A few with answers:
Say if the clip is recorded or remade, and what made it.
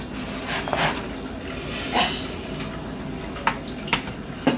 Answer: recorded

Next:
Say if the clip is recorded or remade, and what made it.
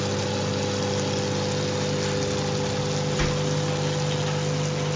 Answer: recorded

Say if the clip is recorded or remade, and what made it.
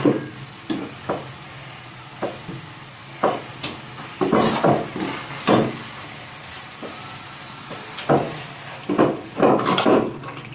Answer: recorded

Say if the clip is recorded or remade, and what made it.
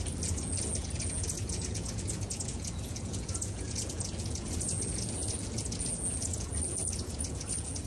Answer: remade, vocoder, Vocos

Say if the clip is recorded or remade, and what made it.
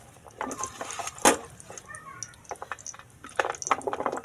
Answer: recorded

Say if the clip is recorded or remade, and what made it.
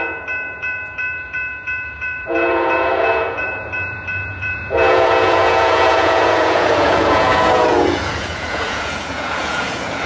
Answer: remade, vocoder, Vocos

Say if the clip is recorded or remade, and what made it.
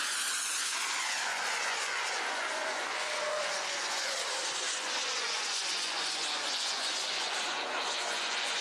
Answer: remade, vocoder, Vocos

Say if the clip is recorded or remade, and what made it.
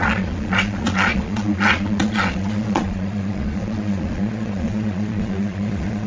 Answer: remade, vocoder, Vocos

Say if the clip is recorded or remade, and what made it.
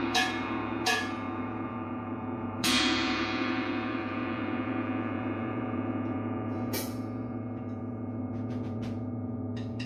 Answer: remade, vocoder, Vocos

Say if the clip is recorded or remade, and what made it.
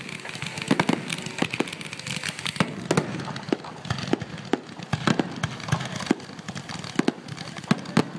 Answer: recorded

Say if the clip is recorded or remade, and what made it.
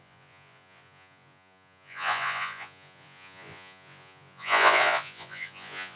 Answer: remade, vocoder, Vocos